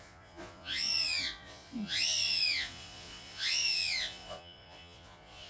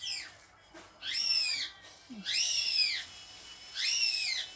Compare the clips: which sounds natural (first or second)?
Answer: second